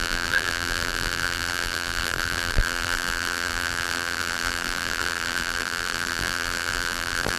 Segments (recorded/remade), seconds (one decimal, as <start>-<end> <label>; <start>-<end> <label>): 0.0-7.4 remade